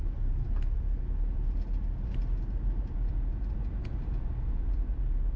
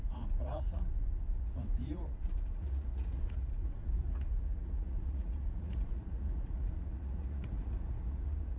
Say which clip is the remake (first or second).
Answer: second